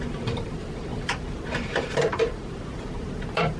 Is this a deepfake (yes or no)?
yes